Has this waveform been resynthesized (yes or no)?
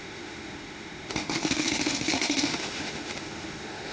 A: yes